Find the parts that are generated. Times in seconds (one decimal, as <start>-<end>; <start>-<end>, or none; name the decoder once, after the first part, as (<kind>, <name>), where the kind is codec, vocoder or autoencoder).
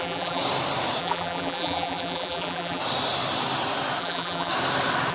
0.0-0.4 (vocoder, BigVGAN v2); 1.0-2.8; 4.0-4.5